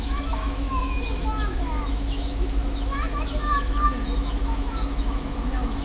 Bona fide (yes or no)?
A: no